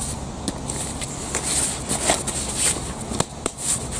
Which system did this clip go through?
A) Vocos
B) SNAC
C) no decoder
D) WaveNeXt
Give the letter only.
C